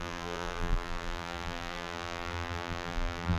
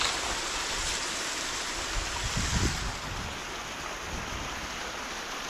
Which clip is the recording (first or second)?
second